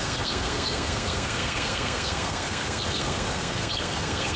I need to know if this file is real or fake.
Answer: fake